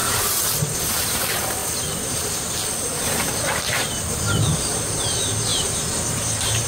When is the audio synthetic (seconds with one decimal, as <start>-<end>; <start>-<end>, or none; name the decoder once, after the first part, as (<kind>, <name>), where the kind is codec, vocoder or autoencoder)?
none